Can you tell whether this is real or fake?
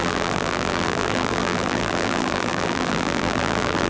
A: fake